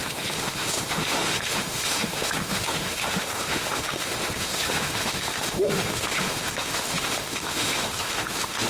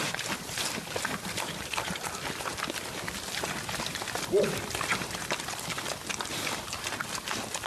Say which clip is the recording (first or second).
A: second